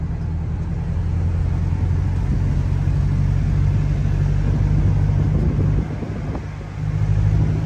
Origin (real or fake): real